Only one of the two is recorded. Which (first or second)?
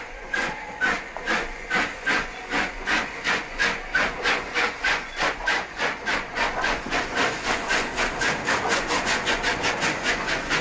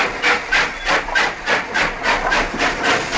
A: second